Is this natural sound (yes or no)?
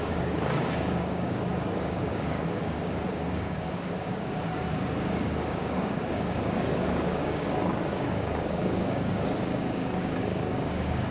no